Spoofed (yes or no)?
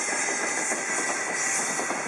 no